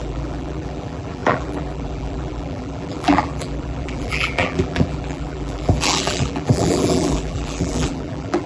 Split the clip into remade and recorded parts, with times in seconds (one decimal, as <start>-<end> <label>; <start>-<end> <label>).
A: 0.0-8.5 remade